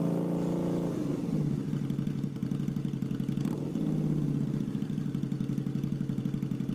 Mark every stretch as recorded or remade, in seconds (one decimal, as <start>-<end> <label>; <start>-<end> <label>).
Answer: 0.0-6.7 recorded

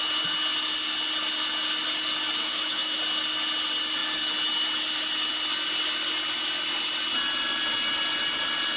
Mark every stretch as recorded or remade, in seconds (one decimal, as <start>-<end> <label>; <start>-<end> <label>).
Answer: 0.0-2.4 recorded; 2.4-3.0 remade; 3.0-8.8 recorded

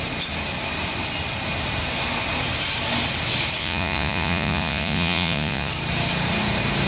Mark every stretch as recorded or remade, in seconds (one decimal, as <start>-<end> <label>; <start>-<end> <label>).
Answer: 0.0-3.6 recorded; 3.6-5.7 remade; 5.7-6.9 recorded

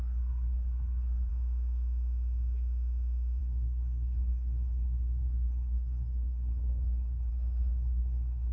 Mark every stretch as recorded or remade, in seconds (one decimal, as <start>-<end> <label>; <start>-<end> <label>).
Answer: 0.0-1.3 remade; 1.3-3.4 recorded; 3.4-8.5 remade

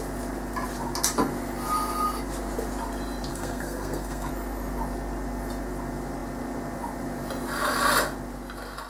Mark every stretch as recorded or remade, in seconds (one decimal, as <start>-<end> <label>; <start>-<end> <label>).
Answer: 0.0-3.3 recorded; 3.3-4.3 remade; 4.3-8.9 recorded

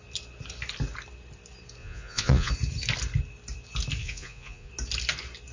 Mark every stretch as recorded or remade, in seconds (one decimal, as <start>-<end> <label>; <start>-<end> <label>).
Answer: 0.0-1.8 recorded; 1.8-2.5 remade; 2.5-4.0 recorded; 4.0-4.7 remade; 4.7-5.5 recorded

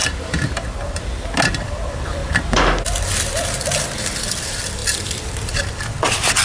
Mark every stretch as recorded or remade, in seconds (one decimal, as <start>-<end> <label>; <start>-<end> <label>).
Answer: 0.0-1.5 recorded; 1.5-6.4 remade

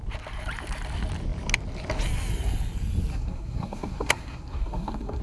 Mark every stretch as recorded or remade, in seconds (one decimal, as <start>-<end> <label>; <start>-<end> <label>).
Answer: 0.0-3.1 recorded; 3.1-5.2 remade